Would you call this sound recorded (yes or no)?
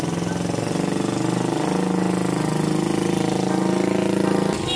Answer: yes